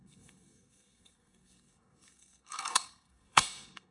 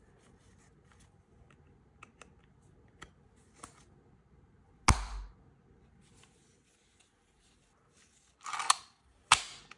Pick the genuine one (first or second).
second